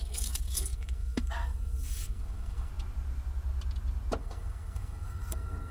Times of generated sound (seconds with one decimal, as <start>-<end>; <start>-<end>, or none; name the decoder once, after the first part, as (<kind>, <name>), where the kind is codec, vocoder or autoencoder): 0.0-2.7 (codec, SNAC); 4.2-5.7